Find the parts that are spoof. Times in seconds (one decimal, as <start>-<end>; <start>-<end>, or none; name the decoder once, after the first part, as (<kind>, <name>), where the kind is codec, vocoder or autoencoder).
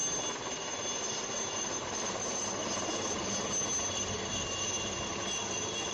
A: 1.5-2.6 (vocoder, BigVGAN v2); 5.2-5.9